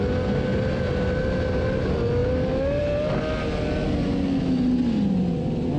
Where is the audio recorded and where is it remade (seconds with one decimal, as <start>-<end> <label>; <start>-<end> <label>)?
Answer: 0.0-5.8 recorded